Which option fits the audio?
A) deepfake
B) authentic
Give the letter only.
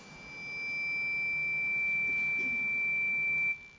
B